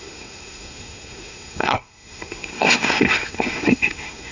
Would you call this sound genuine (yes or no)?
no